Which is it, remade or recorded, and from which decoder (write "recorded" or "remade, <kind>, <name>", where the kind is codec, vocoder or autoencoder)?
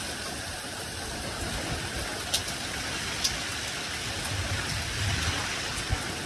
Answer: recorded